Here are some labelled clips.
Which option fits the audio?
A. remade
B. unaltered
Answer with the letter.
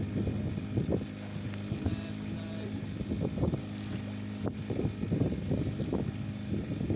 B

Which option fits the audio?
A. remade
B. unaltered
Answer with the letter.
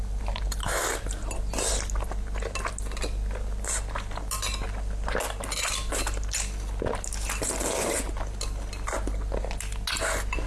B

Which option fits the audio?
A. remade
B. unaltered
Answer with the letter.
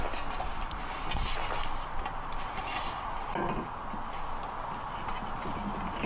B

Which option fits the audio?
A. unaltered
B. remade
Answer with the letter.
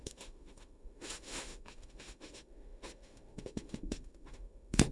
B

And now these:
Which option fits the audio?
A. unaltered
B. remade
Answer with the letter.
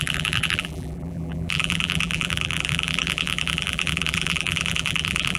B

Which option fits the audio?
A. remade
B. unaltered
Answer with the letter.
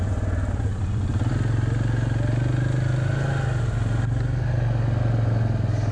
B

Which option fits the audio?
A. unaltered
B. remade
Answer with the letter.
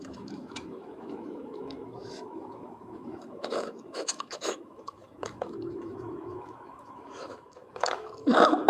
B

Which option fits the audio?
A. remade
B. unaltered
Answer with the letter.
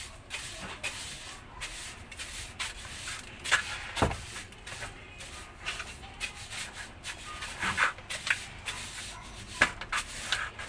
B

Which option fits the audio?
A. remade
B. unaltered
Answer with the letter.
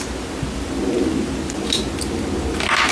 B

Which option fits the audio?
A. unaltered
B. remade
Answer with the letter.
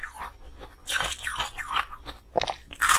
A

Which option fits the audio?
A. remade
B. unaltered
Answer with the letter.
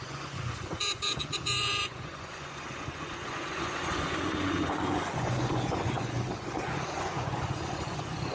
A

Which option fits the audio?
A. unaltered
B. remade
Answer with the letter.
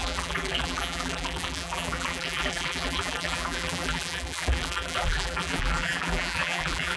B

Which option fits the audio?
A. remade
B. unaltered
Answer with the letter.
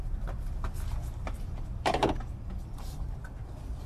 A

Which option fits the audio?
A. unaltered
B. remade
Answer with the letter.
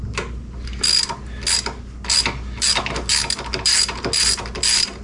A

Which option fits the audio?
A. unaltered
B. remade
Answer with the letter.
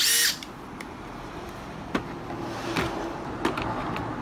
A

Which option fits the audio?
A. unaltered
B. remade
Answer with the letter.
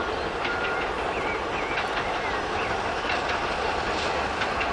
A